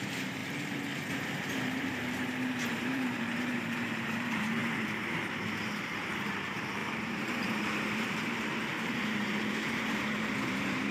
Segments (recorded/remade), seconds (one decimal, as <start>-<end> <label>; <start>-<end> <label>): 0.0-0.4 remade; 0.4-1.1 recorded; 1.1-4.6 remade; 4.6-5.6 recorded; 5.6-10.9 remade